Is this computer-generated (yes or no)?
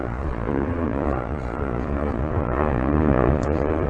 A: yes